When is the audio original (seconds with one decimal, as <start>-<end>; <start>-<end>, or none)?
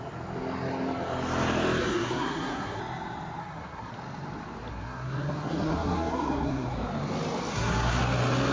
0.0-1.8; 2.8-3.4; 3.9-4.7; 6.7-7.5; 8.0-8.5